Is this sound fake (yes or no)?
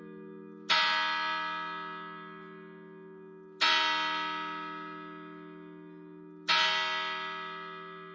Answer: no